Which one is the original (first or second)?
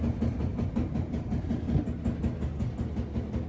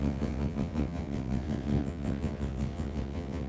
first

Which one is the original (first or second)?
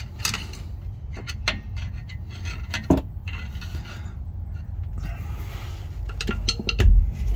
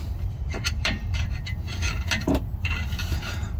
first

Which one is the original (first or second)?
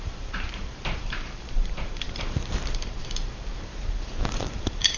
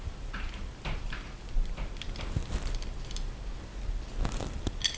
second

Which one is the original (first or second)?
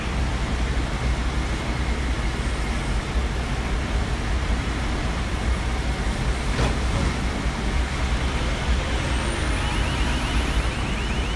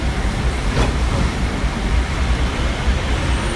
first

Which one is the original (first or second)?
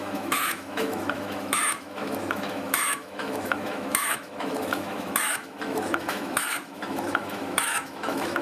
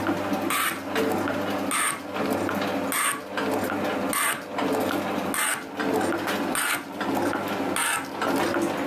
second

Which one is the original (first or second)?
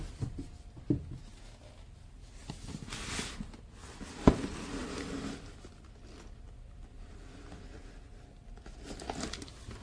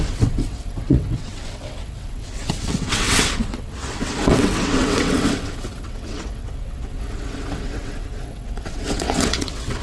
first